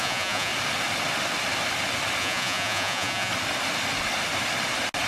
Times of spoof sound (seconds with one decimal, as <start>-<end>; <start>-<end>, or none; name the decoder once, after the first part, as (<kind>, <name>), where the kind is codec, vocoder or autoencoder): 0.0-0.5 (vocoder, Vocos); 2.2-3.3